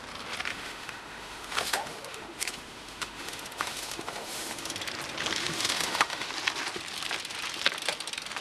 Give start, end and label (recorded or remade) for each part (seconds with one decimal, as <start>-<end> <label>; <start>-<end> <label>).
0.0-0.5 recorded; 0.5-4.7 remade; 4.7-5.4 recorded; 5.4-6.3 remade; 6.3-8.4 recorded